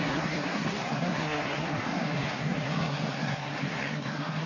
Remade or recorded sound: remade